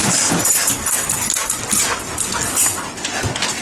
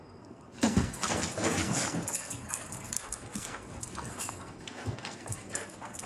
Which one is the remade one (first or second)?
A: second